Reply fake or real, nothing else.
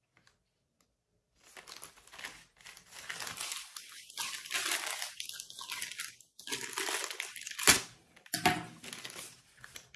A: real